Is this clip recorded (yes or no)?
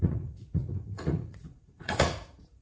no